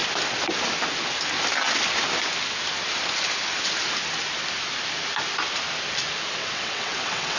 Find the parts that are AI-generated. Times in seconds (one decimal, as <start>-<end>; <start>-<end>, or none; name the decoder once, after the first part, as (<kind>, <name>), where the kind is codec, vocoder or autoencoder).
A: 6.4-7.4 (vocoder, WaveNeXt)